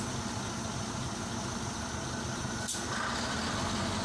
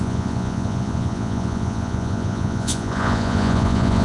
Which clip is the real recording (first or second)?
first